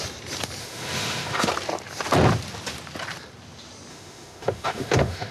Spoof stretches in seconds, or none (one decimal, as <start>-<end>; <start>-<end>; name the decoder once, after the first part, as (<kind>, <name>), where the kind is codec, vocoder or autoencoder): 0.6-1.5 (autoencoder, DAC-VAE); 3.9-5.3